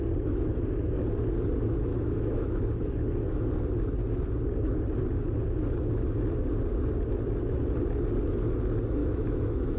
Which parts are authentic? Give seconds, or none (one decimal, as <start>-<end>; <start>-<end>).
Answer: 0.0-1.9; 2.6-9.0